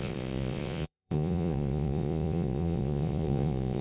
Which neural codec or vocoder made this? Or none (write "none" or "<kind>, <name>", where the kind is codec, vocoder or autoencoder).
vocoder, Vocos